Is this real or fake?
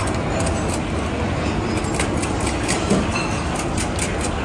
real